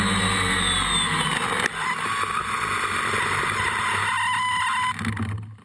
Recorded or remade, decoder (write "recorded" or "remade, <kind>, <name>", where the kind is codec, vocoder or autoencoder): recorded